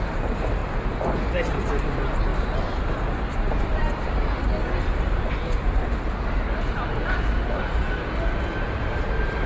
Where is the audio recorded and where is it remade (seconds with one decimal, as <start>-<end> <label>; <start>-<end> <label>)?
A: 0.0-9.5 recorded

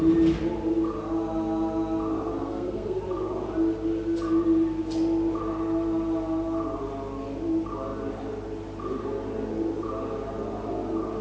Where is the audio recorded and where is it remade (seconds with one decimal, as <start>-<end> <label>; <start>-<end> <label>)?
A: 0.0-2.4 recorded; 2.4-3.0 remade; 3.0-11.2 recorded

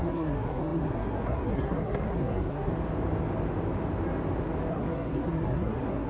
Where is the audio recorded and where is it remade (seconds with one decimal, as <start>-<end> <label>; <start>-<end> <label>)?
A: 0.0-2.7 remade; 2.7-4.7 recorded; 4.7-6.1 remade

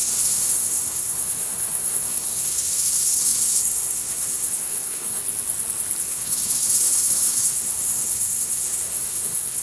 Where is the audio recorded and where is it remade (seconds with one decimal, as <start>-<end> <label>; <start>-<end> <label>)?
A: 0.0-5.2 remade; 5.2-6.0 recorded; 6.0-9.6 remade

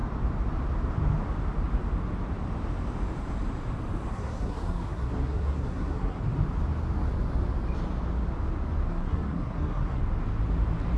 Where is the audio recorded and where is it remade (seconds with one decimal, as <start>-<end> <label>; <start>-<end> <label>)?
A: 0.0-4.1 recorded; 4.1-6.2 remade; 6.2-8.9 recorded; 8.9-10.0 remade; 10.0-11.0 recorded

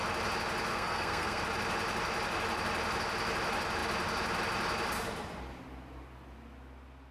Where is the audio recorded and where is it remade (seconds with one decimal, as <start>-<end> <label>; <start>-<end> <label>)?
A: 0.0-0.7 recorded; 0.7-1.4 remade; 1.4-7.1 recorded

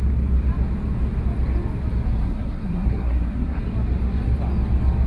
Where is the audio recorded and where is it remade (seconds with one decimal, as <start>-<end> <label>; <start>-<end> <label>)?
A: 0.0-2.2 recorded; 2.2-3.6 remade; 3.6-5.1 recorded